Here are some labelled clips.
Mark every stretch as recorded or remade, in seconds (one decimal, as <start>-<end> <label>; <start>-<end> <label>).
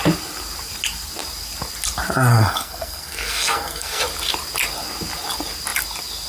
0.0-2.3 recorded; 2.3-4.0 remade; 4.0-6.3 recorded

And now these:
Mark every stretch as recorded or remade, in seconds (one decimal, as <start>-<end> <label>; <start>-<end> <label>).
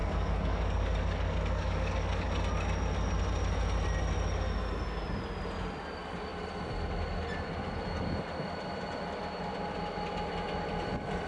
0.0-2.3 remade; 2.3-11.3 recorded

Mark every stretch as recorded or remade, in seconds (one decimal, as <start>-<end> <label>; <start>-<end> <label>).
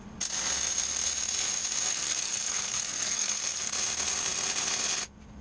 0.0-1.9 recorded; 1.9-3.7 remade; 3.7-5.4 recorded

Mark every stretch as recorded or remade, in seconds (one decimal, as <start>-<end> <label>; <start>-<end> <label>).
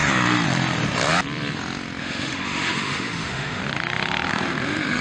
0.0-2.0 recorded; 2.0-3.6 remade; 3.6-4.3 recorded; 4.3-5.0 remade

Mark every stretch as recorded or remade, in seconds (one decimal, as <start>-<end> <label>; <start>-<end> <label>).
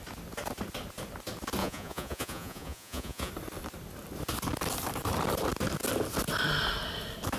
0.0-1.6 recorded; 1.6-3.3 remade; 3.3-7.4 recorded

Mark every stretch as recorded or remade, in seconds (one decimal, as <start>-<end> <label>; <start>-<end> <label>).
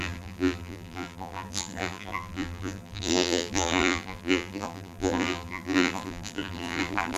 0.0-7.2 remade